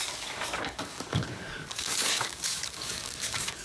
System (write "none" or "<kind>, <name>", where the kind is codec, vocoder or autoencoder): codec, DAC